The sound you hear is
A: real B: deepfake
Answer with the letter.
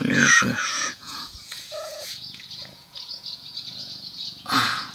B